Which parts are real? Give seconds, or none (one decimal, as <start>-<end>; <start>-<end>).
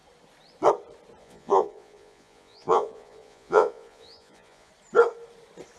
0.0-1.2; 4.7-5.8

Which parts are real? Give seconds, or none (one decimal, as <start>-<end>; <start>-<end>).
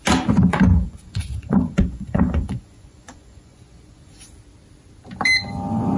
0.0-0.5; 4.1-6.0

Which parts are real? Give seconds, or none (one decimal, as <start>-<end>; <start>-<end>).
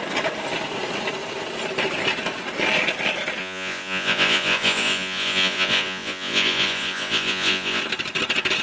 0.0-3.4; 7.8-8.6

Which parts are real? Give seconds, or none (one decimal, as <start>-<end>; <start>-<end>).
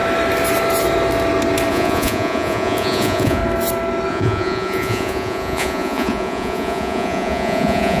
0.0-1.7; 3.4-4.1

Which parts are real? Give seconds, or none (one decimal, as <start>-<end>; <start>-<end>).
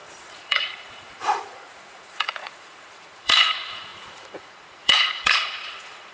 none